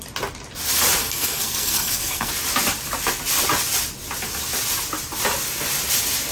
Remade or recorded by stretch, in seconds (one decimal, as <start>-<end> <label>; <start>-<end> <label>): 0.0-1.0 recorded; 1.0-2.3 remade; 2.3-6.3 recorded